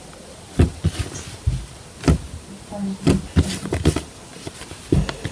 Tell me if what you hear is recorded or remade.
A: recorded